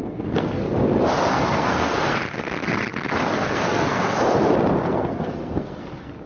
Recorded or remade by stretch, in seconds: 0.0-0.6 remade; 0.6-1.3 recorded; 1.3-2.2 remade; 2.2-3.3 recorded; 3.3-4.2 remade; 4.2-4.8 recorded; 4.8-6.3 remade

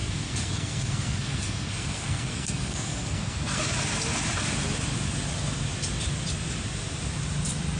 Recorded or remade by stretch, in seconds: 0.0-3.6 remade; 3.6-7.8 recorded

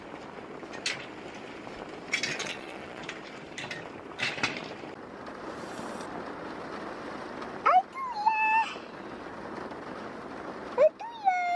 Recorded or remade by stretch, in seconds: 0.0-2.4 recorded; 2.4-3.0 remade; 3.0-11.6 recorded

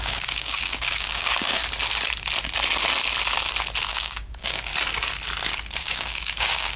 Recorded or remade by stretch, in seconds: 0.0-1.6 remade; 1.6-3.9 recorded; 3.9-4.7 remade; 4.7-5.8 recorded; 5.8-6.8 remade

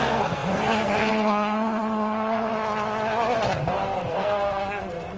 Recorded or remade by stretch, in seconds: 0.0-2.5 remade; 2.5-3.7 recorded; 3.7-5.2 remade